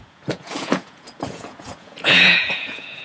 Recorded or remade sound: remade